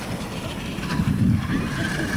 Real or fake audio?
real